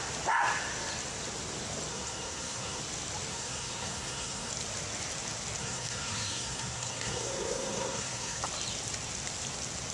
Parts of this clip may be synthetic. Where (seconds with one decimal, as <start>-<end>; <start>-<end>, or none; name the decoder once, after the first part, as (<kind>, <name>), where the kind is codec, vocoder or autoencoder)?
1.9-2.8 (codec, SNAC); 3.3-4.5; 5.6-8.4